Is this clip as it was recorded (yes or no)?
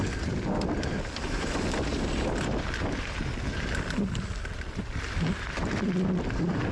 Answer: yes